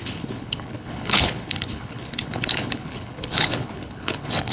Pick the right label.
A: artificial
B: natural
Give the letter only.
A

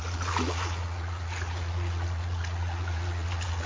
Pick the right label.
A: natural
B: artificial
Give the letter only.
B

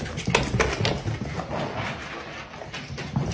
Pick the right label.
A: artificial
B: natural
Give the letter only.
B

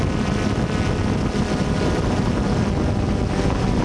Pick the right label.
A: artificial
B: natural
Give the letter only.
B